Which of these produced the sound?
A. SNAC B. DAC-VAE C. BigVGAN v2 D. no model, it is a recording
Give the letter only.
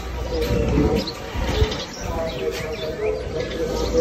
D